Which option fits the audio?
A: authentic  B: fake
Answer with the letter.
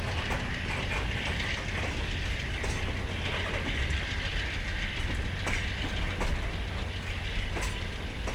A